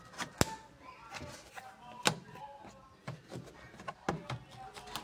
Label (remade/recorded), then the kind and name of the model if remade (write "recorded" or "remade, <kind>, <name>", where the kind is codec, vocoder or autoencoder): recorded